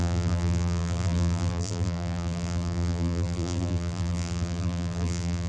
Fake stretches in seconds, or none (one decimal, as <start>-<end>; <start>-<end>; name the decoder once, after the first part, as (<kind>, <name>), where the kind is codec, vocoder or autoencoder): 0.0-5.5 (vocoder, BigVGAN v2)